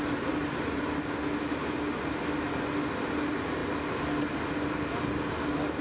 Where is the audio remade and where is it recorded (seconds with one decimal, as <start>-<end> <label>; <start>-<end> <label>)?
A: 0.0-5.8 recorded